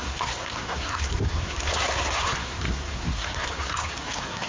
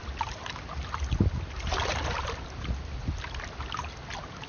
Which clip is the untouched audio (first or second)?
second